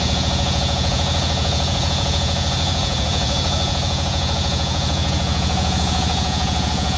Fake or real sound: fake